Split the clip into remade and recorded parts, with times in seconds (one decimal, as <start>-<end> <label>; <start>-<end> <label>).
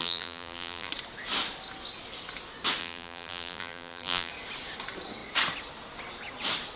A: 0.0-0.9 remade; 0.9-2.8 recorded; 2.8-4.3 remade; 4.3-6.8 recorded